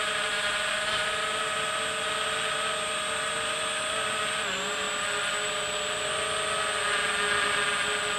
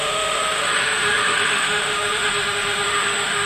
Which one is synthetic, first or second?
second